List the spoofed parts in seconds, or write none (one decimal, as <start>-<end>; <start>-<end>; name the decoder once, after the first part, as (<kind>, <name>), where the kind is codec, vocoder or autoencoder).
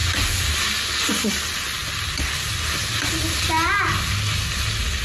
none